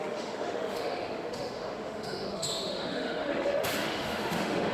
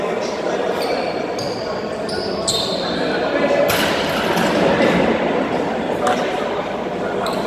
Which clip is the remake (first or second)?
first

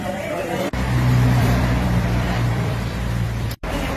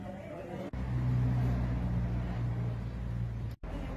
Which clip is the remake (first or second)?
first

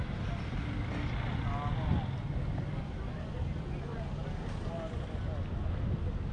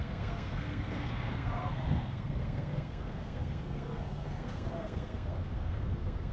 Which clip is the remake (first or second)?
second